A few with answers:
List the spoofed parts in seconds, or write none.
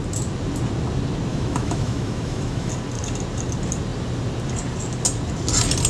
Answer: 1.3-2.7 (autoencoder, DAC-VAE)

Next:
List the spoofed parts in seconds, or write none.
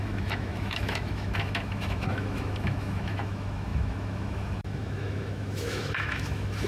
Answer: 0.0-6.7 (autoencoder, DAC-VAE)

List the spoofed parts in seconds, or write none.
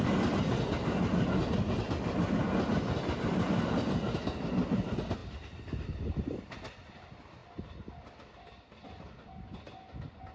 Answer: none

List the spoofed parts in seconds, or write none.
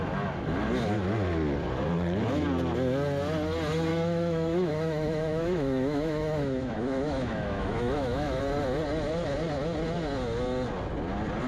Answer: 3.9-8.4 (autoencoder, DAC-VAE)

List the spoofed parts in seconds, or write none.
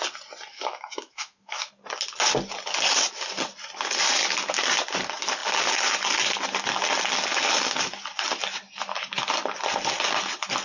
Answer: 0.5-1.7 (autoencoder, DAC-VAE)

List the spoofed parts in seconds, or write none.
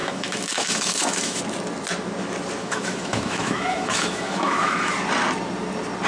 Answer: 0.0-1.4 (autoencoder, DAC-VAE); 2.6-4.9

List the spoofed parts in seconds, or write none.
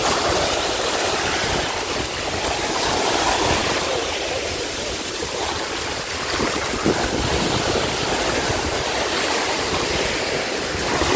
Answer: none